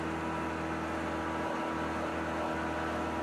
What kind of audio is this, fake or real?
real